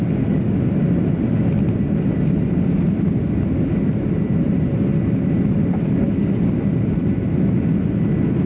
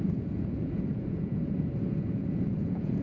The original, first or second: first